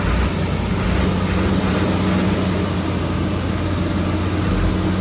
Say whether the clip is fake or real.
real